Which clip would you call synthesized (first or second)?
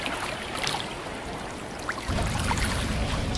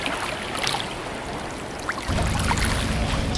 first